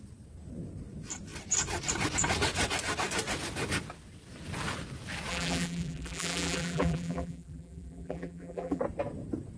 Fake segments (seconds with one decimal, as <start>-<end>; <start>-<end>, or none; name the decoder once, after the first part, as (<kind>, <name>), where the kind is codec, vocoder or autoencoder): 5.3-8.8 (vocoder, BigVGAN v2)